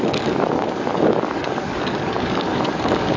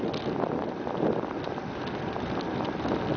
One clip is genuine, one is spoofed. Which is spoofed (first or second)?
first